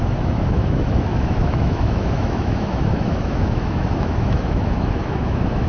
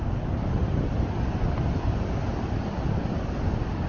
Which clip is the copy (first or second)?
first